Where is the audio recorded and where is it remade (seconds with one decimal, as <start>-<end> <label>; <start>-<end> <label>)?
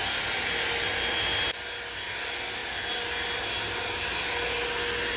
0.0-5.2 recorded